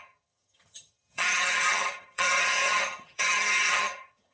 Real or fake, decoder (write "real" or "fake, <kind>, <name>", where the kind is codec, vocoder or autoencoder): fake, vocoder, HiFi-GAN